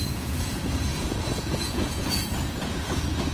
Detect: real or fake fake